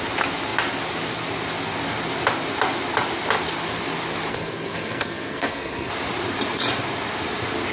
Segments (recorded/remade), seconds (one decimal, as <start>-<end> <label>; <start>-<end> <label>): 0.0-4.3 recorded; 4.3-5.9 remade; 5.9-7.7 recorded